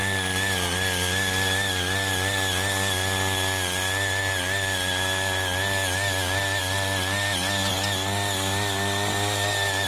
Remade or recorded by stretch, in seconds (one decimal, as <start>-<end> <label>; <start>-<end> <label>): 0.0-9.9 recorded